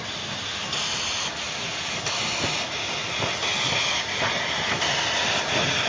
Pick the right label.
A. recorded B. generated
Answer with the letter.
A